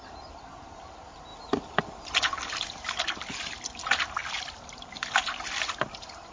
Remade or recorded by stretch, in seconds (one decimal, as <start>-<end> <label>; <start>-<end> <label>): 0.0-6.3 recorded